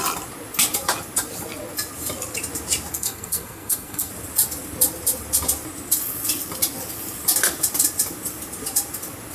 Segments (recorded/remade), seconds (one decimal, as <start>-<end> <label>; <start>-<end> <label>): 0.0-2.9 recorded; 2.9-4.1 remade; 4.1-9.3 recorded